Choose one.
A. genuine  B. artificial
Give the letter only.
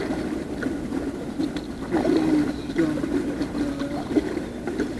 A